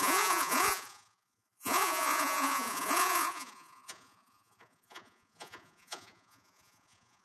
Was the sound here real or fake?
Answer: fake